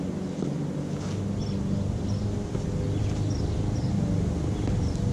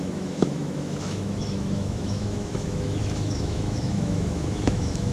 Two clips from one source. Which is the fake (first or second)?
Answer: second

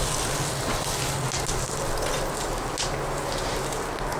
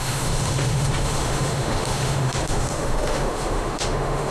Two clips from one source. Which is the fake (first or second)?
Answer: second